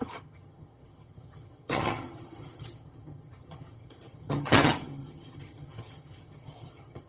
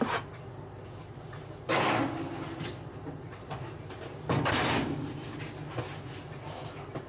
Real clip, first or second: second